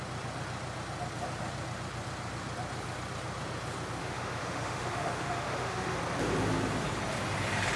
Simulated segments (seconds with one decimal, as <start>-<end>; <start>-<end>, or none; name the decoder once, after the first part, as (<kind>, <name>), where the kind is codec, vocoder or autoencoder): 4.0-6.0 (autoencoder, DAC-VAE)